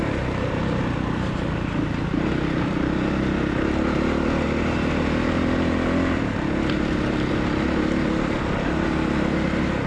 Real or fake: real